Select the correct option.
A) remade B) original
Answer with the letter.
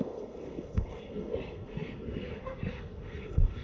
A